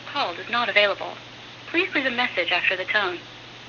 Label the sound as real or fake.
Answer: real